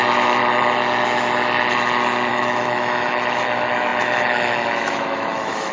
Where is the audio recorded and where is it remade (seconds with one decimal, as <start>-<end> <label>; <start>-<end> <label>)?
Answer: 0.0-0.4 remade; 0.4-2.3 recorded; 2.3-5.7 remade